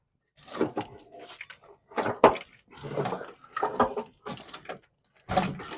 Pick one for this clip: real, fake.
real